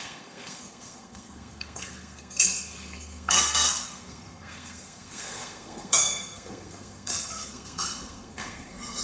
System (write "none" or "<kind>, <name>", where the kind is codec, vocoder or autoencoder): codec, SNAC